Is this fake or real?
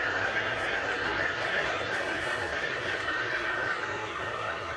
fake